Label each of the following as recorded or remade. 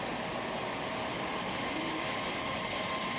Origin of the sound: recorded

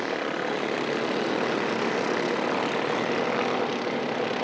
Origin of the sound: recorded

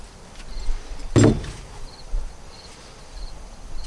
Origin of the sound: recorded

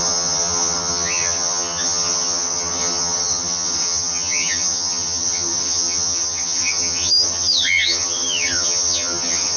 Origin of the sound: remade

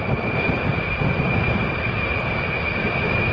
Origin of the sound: remade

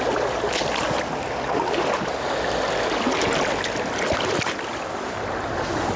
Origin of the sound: recorded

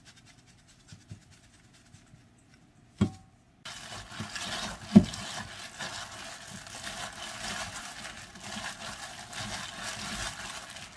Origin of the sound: recorded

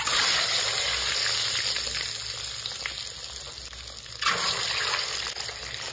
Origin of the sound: recorded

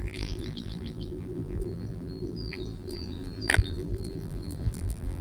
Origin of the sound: remade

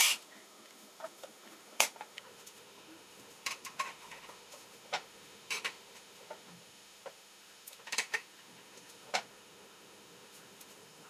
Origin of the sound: remade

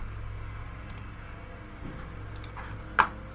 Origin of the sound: recorded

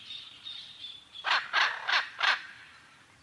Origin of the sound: remade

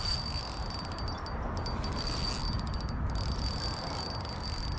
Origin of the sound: recorded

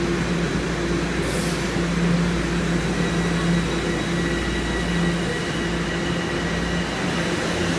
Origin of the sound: recorded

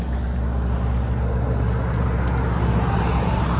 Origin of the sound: recorded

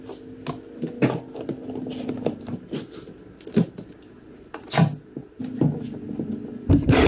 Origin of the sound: recorded